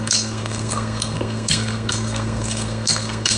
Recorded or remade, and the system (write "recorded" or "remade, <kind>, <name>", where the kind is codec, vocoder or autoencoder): remade, codec, SNAC